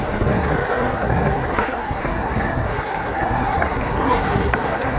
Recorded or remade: remade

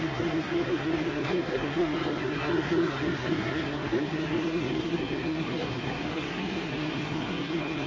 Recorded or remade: remade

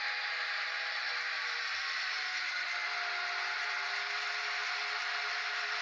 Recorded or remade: recorded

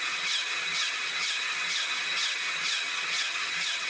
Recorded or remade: remade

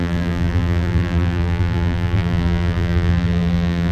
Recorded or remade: remade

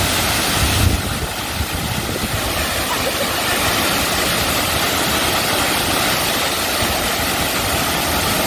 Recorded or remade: recorded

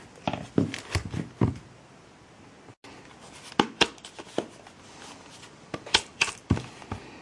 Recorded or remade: recorded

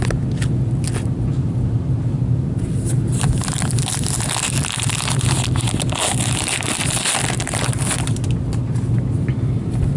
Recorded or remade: recorded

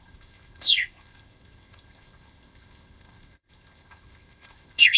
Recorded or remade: remade